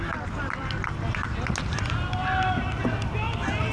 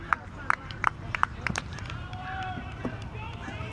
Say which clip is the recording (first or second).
first